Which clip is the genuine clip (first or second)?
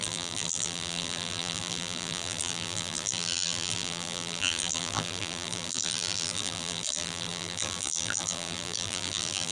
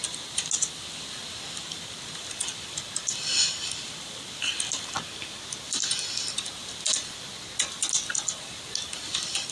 second